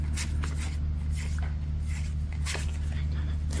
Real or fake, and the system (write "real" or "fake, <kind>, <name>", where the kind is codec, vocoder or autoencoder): real